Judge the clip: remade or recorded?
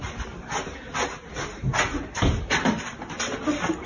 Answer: recorded